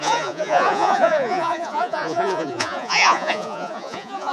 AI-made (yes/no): yes